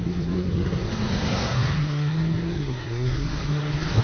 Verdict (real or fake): fake